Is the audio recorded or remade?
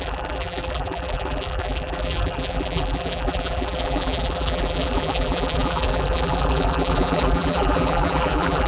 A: remade